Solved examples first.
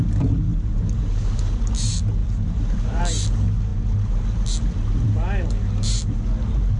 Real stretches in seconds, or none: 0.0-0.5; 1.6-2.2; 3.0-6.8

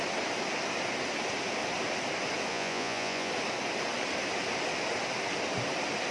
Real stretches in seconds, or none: 0.0-2.5; 3.3-6.1

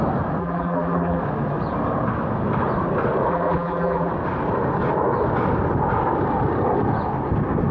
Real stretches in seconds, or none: 0.0-0.4; 1.2-3.3; 4.1-7.7